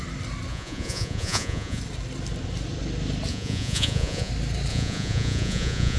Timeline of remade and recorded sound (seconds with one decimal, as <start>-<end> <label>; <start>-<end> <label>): 0.0-0.5 recorded; 0.5-1.8 remade; 1.8-3.3 recorded; 3.3-4.3 remade; 4.3-4.7 recorded; 4.7-6.0 remade